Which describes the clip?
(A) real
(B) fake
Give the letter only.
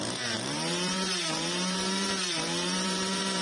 B